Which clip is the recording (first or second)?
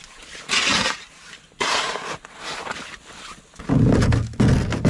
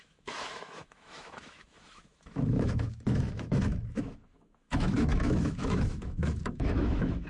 first